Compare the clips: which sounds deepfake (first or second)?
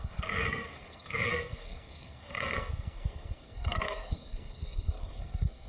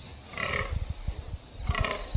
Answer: first